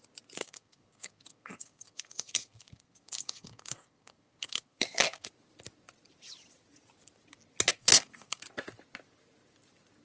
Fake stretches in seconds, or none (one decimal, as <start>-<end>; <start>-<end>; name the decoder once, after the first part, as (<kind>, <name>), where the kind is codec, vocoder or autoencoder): 0.4-5.3 (codec, SNAC); 7.7-8.4